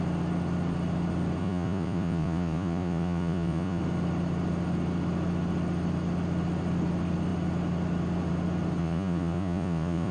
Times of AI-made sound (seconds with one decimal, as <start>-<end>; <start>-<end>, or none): 1.4-3.8; 8.8-10.1